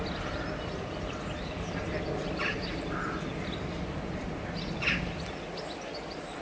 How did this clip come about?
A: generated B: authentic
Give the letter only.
B